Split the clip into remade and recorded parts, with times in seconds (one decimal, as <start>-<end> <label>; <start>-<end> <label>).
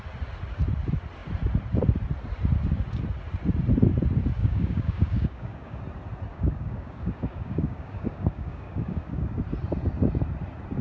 0.0-4.4 recorded; 4.4-5.8 remade; 5.8-6.3 recorded; 6.3-9.4 remade; 9.4-10.8 recorded